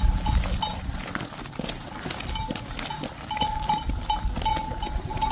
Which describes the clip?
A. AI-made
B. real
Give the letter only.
B